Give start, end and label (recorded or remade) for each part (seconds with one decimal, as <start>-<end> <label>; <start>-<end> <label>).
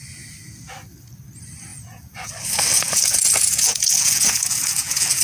0.0-1.7 recorded; 1.7-2.3 remade; 2.3-2.7 recorded; 2.7-5.2 remade